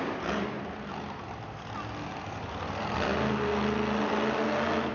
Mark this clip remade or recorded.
recorded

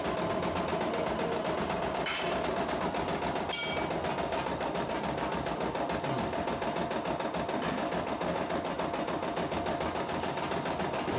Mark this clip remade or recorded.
recorded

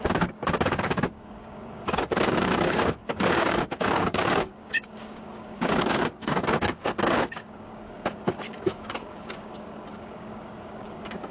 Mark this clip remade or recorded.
remade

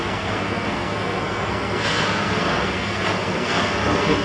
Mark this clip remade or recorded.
remade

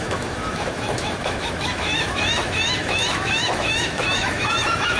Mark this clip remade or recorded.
remade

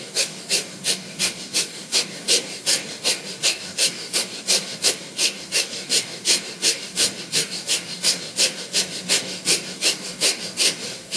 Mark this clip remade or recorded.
remade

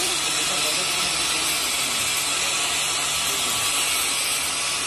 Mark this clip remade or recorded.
recorded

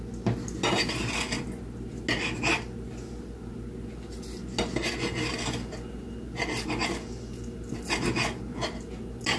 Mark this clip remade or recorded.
recorded